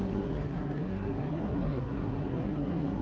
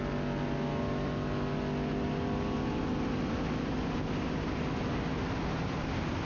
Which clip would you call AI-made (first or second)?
first